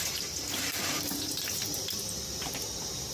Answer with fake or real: fake